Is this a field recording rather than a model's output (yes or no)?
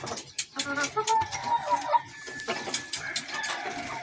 yes